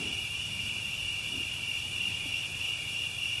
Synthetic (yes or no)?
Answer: yes